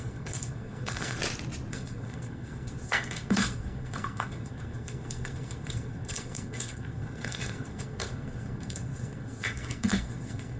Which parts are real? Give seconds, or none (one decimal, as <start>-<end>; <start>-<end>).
1.2-1.7